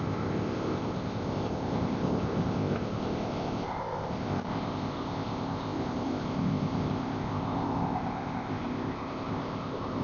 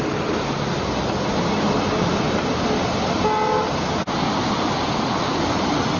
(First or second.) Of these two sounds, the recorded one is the second